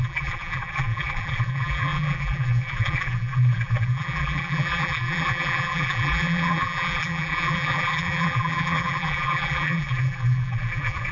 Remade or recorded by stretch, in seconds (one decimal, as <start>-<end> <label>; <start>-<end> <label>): 0.0-11.1 remade